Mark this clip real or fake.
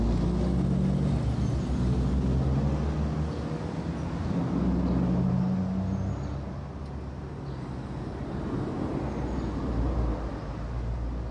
real